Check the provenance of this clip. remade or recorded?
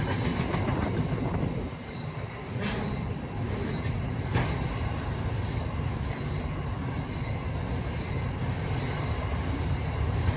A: recorded